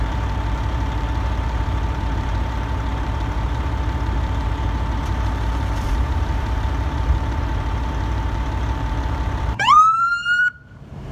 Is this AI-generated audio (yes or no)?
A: yes